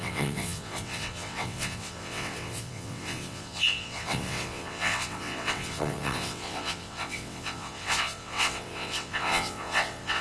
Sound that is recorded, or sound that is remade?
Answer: remade